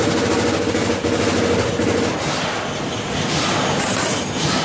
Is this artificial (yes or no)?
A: no